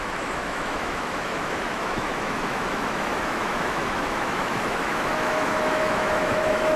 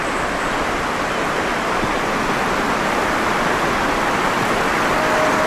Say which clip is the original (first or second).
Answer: second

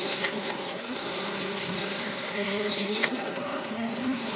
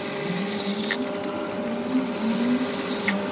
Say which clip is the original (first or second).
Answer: second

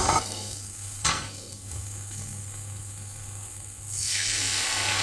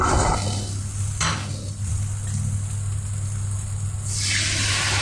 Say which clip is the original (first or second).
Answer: second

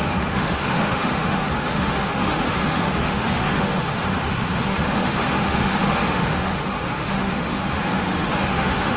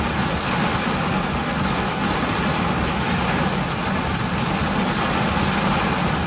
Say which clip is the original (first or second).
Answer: second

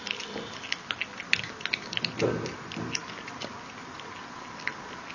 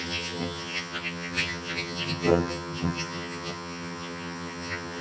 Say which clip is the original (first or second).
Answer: first